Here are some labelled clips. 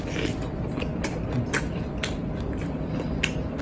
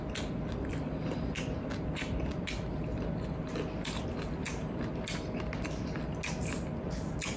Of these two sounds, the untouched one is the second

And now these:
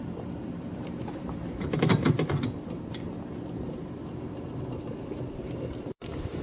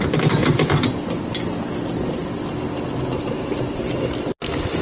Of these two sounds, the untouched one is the second